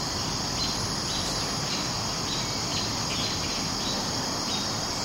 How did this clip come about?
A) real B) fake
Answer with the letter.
A